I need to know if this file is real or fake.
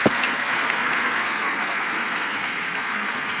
fake